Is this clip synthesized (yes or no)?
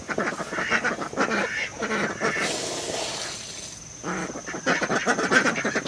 no